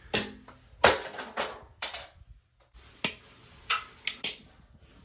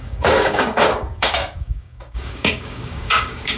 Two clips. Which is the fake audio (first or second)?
second